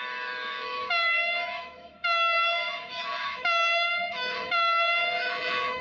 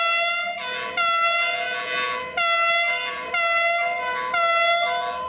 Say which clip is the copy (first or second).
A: first